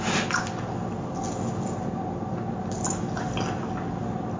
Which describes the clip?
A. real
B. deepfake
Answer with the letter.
A